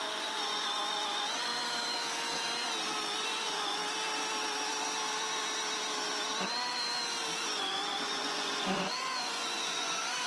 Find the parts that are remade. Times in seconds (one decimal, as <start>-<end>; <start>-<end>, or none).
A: 0.0-1.5; 3.2-3.8; 7.4-10.3